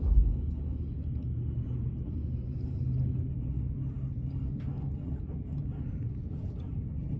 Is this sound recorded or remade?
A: recorded